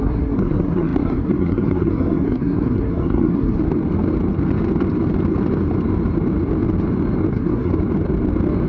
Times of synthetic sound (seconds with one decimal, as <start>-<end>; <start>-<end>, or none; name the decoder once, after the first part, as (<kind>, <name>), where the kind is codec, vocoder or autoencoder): 0.0-3.6 (codec, SNAC); 7.3-7.7